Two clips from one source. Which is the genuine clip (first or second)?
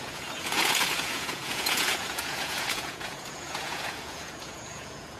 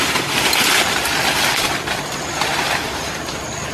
second